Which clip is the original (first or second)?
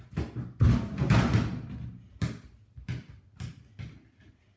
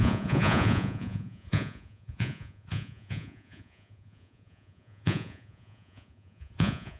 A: first